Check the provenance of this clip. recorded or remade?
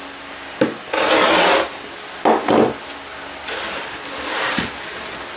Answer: recorded